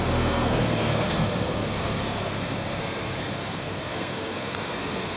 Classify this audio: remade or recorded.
remade